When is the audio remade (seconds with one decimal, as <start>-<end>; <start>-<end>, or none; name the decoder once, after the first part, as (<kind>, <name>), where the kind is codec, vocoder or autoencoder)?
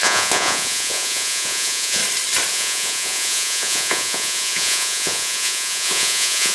0.0-2.0 (vocoder, Vocos); 2.5-6.5